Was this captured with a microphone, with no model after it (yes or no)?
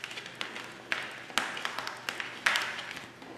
yes